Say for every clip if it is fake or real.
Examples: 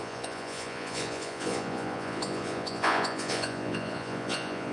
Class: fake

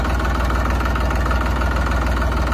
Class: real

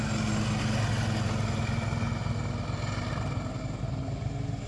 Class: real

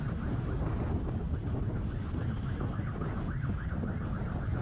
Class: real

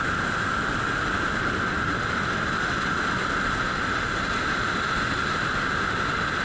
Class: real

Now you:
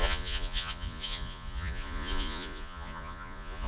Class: fake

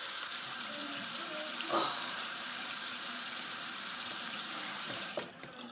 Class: fake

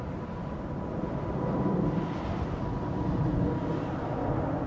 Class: real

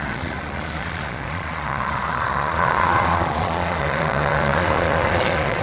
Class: fake